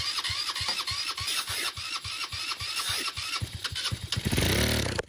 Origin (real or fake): real